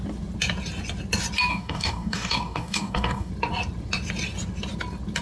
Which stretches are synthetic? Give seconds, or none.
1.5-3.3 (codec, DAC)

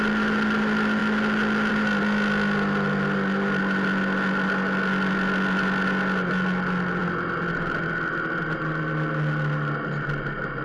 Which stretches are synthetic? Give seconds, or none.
none

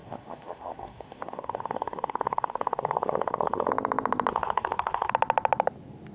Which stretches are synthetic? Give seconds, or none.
0.0-3.7 (codec, SNAC); 4.3-5.1